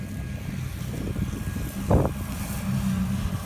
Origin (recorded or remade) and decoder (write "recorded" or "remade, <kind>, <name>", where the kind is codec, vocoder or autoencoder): recorded